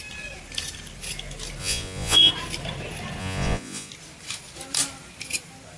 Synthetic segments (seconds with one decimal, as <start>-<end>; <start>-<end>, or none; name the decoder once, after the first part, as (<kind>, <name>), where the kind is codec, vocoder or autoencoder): 1.6-2.3 (vocoder, Vocos); 3.2-3.9